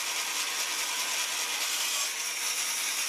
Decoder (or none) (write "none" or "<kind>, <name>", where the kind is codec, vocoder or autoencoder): none